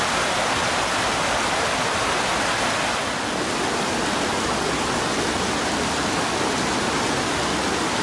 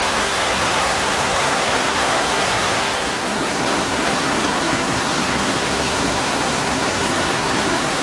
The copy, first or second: second